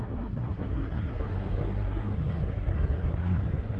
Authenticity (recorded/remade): remade